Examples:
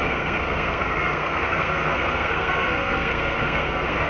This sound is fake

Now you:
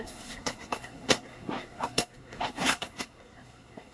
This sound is fake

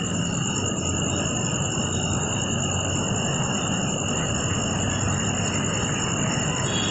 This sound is real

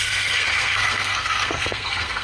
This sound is fake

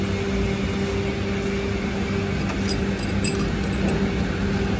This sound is real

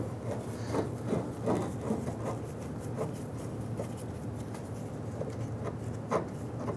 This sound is real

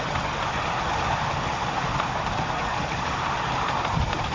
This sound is real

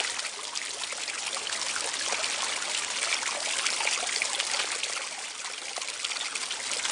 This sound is real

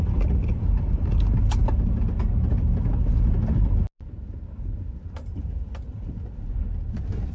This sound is real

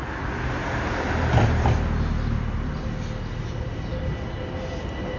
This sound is real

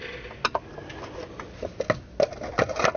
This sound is real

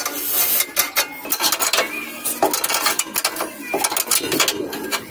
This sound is real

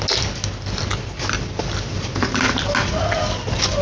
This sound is real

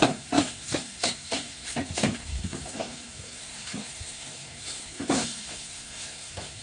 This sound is fake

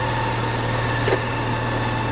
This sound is real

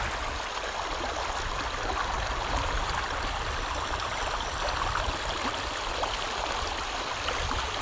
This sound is real